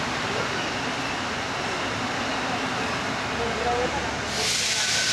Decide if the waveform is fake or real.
real